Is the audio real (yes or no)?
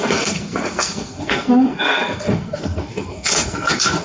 no